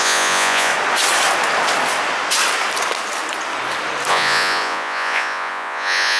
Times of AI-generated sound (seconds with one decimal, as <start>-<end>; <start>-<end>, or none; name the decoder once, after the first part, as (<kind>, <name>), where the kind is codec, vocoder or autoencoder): 0.0-0.7 (vocoder, Vocos); 4.1-6.2